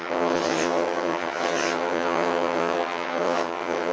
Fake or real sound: fake